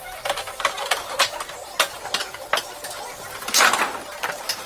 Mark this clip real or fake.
real